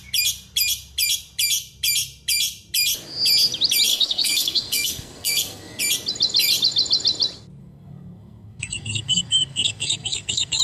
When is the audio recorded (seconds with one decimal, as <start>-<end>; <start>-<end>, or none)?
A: 0.0-3.9; 5.8-7.6

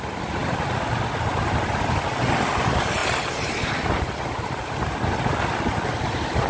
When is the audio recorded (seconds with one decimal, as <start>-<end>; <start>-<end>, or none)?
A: 0.0-6.5

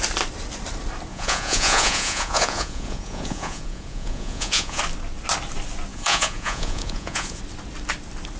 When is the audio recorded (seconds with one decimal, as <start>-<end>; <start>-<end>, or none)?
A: 0.0-1.1; 4.8-5.9; 7.4-8.4

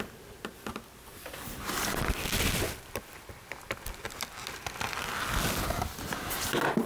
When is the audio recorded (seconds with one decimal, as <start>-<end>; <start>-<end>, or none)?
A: 0.0-1.1; 4.0-6.9

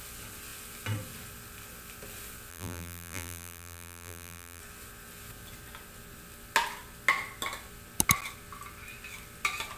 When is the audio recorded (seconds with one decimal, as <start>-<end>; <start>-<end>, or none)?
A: 0.0-2.5; 4.6-9.8

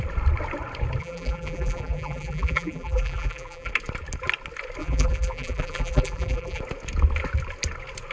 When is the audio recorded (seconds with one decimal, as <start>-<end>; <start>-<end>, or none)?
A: 0.0-1.0; 3.7-4.8; 6.6-8.1

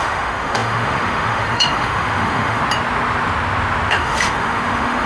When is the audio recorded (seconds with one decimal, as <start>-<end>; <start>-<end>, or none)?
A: 2.6-3.9